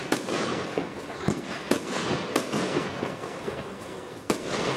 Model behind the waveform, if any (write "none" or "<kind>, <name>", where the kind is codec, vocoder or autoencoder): codec, SNAC